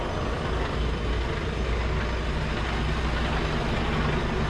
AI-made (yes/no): no